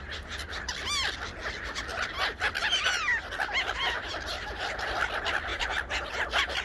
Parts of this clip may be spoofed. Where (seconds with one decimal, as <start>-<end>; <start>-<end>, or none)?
none